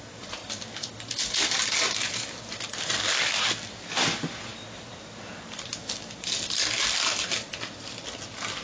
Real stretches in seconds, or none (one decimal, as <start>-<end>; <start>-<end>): 0.0-8.6